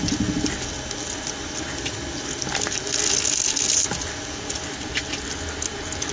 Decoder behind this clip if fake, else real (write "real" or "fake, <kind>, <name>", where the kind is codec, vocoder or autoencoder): real